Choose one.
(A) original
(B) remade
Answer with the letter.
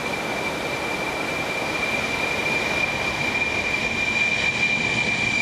A